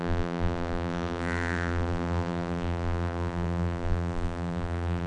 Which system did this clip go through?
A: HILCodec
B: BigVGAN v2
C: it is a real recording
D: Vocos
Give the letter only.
B